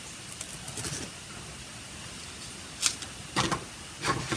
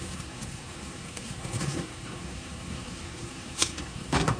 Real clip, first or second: first